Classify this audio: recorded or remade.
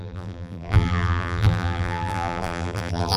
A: remade